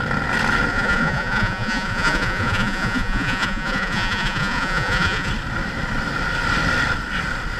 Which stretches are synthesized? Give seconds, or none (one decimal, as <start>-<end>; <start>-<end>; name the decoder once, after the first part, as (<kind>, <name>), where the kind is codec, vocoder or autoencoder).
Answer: 0.7-5.3 (vocoder, Vocos)